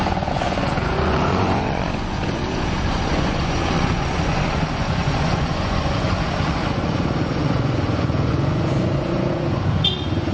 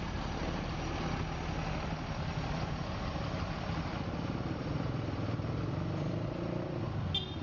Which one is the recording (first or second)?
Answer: second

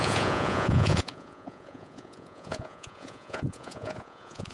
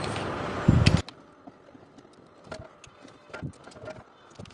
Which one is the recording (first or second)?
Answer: second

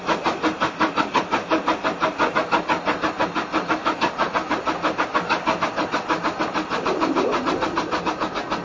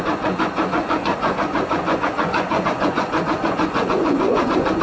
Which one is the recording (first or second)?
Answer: first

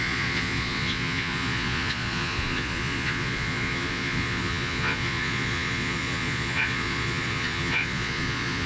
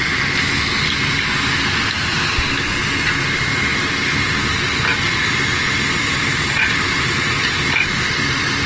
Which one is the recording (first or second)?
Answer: second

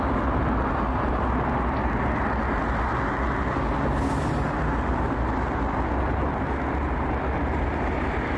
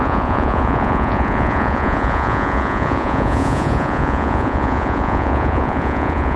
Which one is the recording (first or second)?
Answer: first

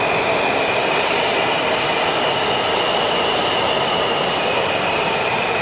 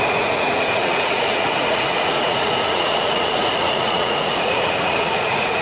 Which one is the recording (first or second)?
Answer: first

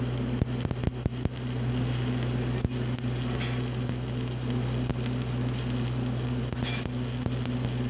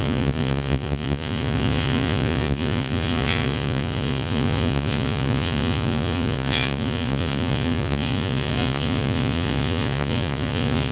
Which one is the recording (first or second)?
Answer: first